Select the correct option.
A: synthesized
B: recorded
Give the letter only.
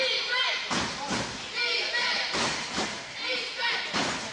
B